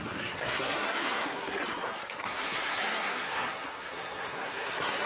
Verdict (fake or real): fake